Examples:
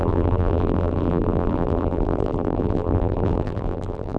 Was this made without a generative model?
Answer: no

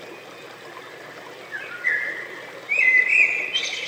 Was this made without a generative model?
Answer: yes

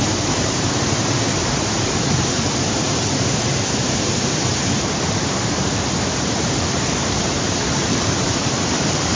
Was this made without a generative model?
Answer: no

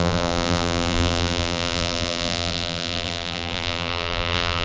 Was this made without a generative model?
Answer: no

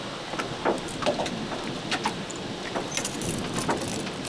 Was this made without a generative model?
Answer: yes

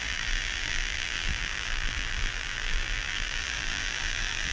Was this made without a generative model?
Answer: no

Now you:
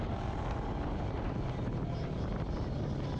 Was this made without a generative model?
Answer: yes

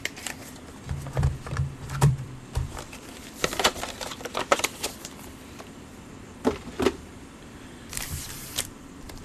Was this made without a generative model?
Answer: no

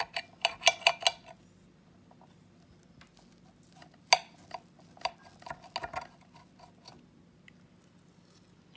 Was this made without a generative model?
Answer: yes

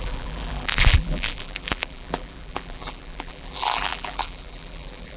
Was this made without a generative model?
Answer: no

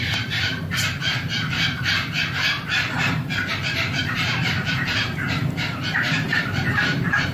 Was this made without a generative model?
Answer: no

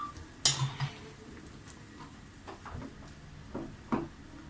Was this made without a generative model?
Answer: yes